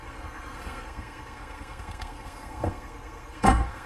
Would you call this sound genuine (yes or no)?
no